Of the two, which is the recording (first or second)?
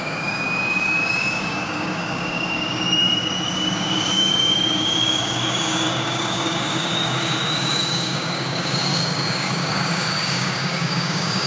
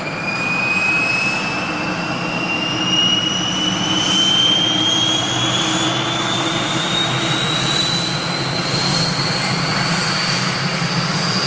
second